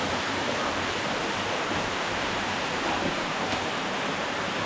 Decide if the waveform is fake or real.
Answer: fake